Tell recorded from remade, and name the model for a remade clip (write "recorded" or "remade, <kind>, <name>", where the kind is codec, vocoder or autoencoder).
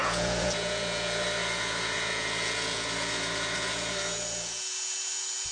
remade, vocoder, Vocos